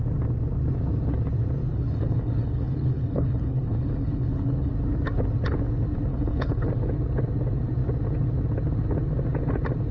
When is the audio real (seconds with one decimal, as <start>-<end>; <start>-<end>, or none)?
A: 0.0-1.7; 4.7-6.1; 6.7-9.9